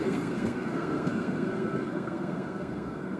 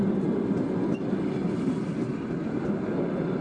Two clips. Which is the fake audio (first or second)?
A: first